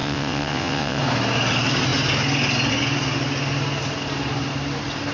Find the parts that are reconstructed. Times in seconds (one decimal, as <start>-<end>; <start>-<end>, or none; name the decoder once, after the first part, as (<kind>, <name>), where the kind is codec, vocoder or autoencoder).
0.0-1.0 (vocoder, WaveNeXt)